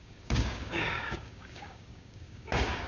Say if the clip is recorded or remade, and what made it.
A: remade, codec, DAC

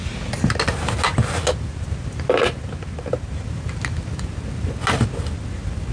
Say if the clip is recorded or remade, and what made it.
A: recorded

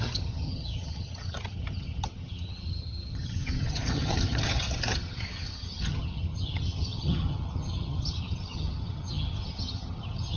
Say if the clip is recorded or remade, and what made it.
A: remade, vocoder, HiFi-GAN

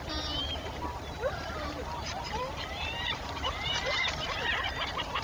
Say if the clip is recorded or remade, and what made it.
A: remade, vocoder, BigVGAN v2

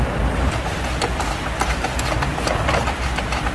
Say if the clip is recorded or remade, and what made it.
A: recorded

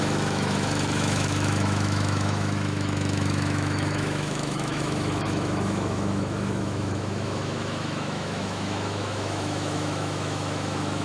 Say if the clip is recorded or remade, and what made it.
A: remade, autoencoder, DAC-VAE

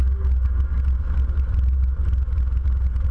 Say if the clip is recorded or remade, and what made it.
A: recorded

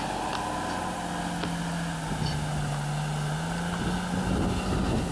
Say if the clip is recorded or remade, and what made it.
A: recorded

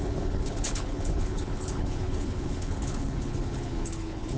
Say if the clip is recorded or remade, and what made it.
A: remade, codec, HILCodec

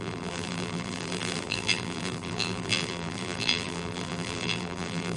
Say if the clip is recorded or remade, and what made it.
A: remade, vocoder, BigVGAN v2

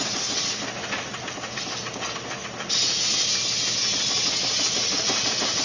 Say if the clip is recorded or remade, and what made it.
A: recorded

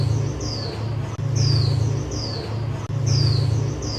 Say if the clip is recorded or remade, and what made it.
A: recorded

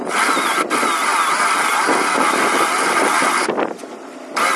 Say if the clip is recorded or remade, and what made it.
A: recorded